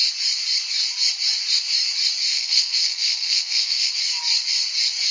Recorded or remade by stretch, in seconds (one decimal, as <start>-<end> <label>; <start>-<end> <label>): 0.0-2.3 recorded; 2.3-3.9 remade; 3.9-5.1 recorded